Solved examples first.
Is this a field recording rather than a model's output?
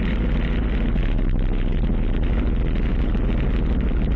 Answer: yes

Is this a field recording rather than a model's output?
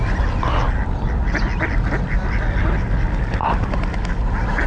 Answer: yes